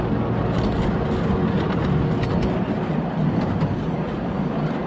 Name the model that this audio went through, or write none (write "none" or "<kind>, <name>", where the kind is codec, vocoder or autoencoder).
none